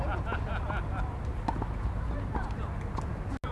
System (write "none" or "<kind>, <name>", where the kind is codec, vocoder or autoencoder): none